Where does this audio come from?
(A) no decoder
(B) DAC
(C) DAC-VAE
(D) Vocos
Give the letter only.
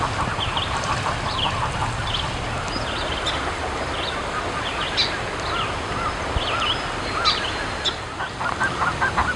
A